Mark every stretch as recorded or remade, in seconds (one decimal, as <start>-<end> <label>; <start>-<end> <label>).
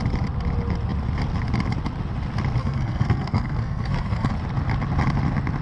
0.0-2.6 recorded; 2.6-4.3 remade; 4.3-5.6 recorded